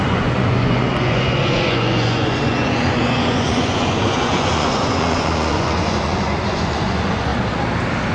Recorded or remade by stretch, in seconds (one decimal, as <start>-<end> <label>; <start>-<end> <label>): 0.0-7.3 remade; 7.3-8.1 recorded